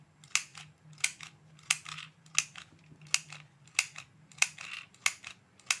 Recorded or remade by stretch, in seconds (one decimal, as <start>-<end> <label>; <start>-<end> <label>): 0.0-5.8 recorded